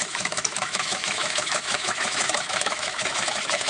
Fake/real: fake